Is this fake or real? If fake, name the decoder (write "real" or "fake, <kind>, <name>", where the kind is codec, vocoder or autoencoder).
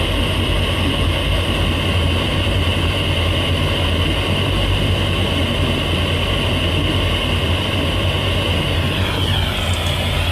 real